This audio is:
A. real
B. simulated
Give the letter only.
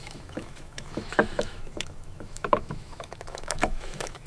B